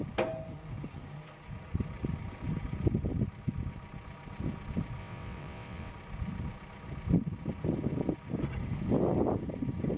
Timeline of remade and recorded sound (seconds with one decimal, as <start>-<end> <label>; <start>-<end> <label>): 0.0-5.0 recorded; 5.0-5.9 remade; 5.9-10.0 recorded